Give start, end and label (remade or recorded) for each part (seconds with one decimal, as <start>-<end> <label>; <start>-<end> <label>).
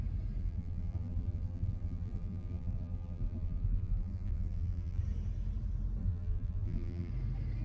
0.0-0.4 recorded; 0.4-5.0 remade; 5.0-6.0 recorded; 6.0-7.1 remade; 7.1-7.6 recorded